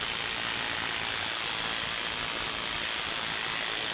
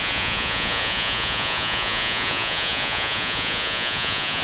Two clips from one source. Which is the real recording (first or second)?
first